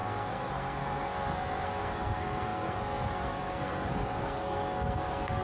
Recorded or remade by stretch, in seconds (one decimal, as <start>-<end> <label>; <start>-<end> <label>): 0.0-5.4 remade